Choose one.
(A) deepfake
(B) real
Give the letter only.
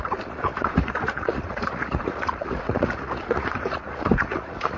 A